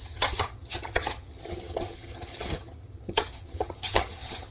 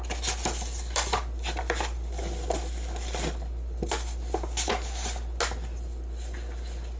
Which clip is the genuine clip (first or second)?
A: second